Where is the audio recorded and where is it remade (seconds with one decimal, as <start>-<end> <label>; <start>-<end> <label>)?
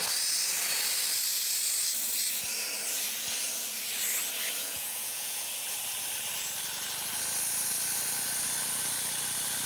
0.0-4.6 recorded; 4.6-5.5 remade; 5.5-9.7 recorded